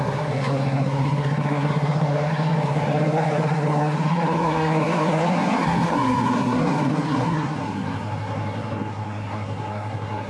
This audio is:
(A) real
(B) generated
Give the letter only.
B